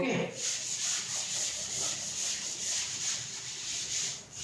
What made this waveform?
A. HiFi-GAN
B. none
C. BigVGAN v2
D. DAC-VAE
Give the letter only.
C